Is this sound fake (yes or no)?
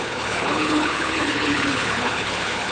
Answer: yes